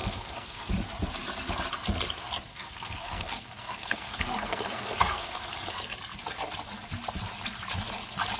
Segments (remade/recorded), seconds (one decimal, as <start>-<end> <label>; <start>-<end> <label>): 0.0-0.7 remade; 0.7-2.5 recorded; 2.5-5.4 remade; 5.4-8.4 recorded